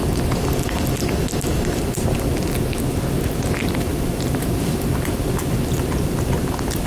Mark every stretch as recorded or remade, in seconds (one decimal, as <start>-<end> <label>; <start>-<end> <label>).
0.0-3.9 recorded; 3.9-5.1 remade; 5.1-6.9 recorded

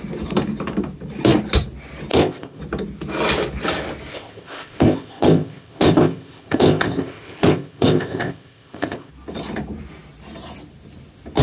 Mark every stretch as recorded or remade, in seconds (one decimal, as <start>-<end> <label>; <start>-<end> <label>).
0.0-2.1 recorded; 2.1-2.6 remade; 2.6-4.1 recorded; 4.1-9.1 remade; 9.1-11.4 recorded

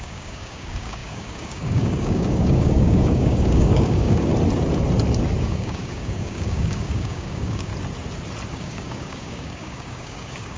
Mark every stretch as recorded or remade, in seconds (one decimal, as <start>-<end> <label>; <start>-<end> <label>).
0.0-4.3 remade; 4.3-5.4 recorded; 5.4-7.7 remade; 7.7-8.5 recorded; 8.5-10.6 remade

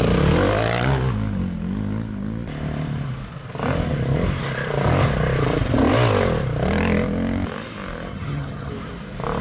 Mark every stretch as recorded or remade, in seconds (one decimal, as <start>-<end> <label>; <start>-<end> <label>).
0.0-8.1 recorded; 8.1-8.7 remade; 8.7-9.4 recorded

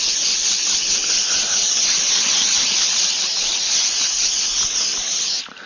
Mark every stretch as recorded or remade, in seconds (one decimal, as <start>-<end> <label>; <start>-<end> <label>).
0.0-5.7 recorded

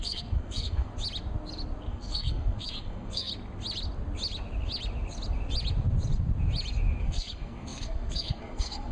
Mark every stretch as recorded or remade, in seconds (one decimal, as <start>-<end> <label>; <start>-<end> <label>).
0.0-0.9 remade; 0.9-1.9 recorded; 1.9-3.3 remade; 3.3-7.0 recorded; 7.0-8.9 remade